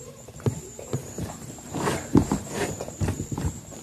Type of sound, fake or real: fake